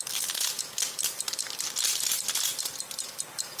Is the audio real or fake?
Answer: real